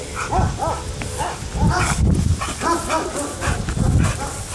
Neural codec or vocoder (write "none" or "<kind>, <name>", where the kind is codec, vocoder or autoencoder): none